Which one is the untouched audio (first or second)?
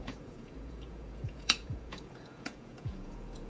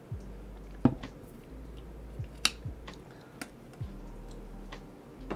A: second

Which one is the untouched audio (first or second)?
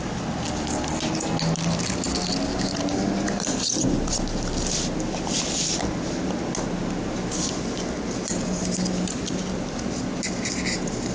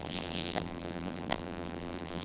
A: first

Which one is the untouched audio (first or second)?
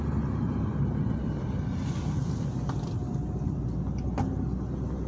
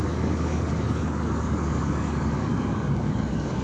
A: first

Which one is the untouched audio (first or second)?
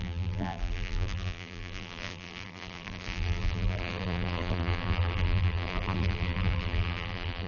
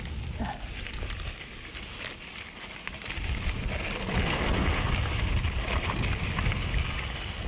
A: second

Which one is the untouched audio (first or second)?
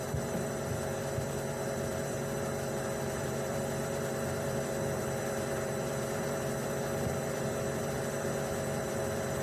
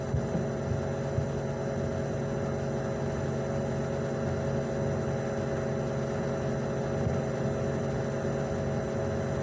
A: second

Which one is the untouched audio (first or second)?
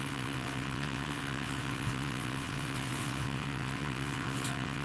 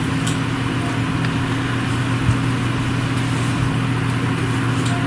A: second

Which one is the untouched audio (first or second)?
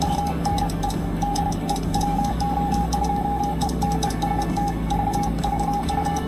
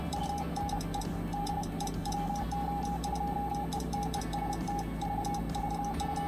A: second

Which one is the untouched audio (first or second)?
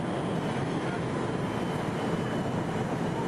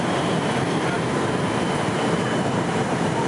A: first